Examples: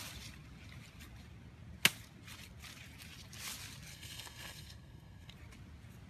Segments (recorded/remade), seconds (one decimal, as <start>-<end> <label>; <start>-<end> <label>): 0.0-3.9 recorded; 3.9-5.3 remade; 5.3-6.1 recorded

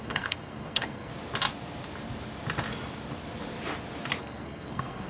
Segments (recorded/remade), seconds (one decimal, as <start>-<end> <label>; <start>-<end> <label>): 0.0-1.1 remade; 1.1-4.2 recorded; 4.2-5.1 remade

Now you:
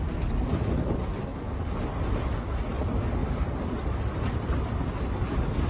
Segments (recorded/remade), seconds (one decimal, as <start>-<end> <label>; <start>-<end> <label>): 0.0-5.7 recorded

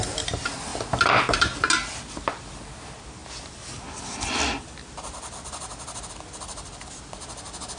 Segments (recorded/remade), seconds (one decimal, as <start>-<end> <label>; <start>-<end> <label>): 0.0-7.8 recorded